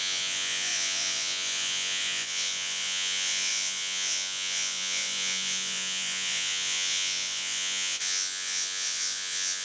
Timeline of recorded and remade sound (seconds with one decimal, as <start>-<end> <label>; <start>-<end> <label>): 0.0-9.6 remade